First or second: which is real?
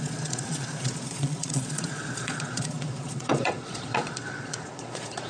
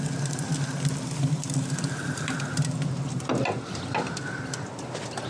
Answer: second